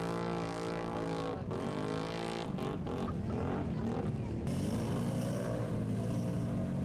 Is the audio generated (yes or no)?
no